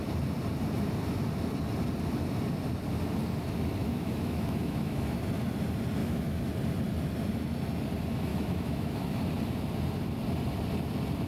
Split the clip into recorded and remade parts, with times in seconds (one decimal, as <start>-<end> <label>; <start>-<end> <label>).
0.0-3.8 recorded; 3.8-5.2 remade; 5.2-6.0 recorded; 6.0-6.5 remade; 6.5-8.3 recorded; 8.3-9.2 remade; 9.2-11.3 recorded